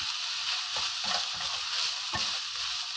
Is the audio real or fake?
real